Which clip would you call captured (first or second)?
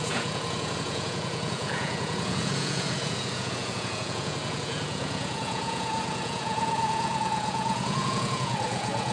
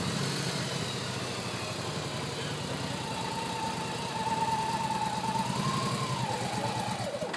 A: second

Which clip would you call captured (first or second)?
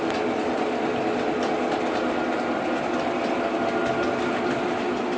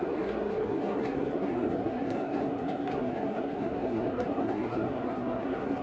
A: first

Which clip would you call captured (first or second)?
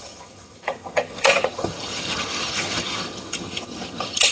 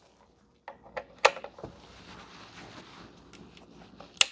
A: second